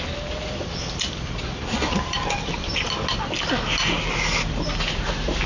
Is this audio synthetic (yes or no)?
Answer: no